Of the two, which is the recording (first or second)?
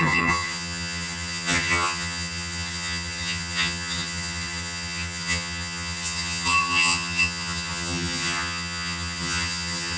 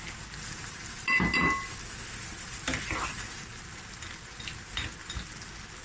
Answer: second